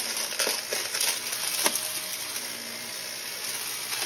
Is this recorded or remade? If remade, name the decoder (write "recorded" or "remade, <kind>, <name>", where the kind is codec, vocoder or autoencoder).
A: recorded